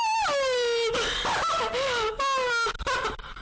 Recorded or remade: recorded